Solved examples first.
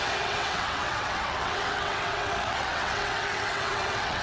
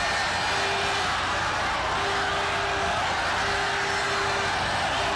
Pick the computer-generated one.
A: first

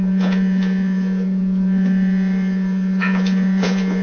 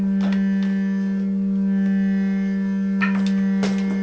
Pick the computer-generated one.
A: first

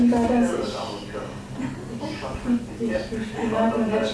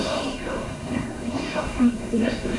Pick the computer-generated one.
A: second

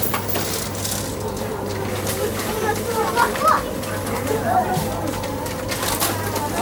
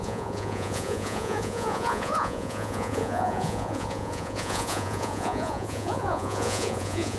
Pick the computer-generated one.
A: second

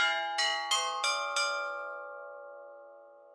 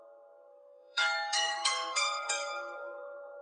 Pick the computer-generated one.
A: second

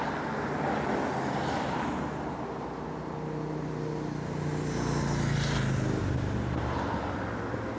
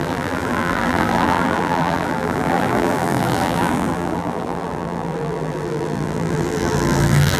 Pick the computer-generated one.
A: second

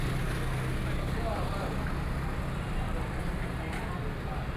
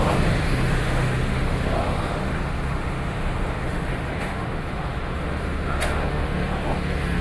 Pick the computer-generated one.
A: second